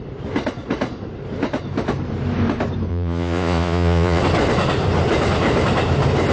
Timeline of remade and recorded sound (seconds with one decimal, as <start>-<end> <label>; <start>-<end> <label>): 0.0-2.9 recorded; 2.9-4.2 remade; 4.2-6.3 recorded